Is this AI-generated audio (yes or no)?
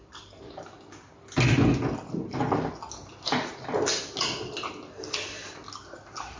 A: no